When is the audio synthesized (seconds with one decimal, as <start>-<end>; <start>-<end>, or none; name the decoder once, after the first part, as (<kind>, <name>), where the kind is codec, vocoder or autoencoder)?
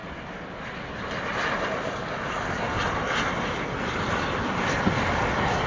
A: none